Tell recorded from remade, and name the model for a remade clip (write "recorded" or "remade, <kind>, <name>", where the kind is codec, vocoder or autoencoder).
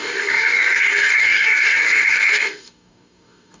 remade, codec, DAC